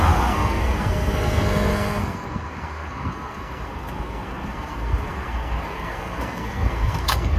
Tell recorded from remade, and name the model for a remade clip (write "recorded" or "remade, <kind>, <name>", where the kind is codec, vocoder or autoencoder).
remade, codec, SNAC